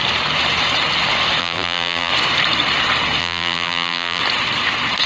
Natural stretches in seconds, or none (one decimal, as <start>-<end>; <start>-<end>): 0.0-1.4; 2.1-3.2; 4.2-5.1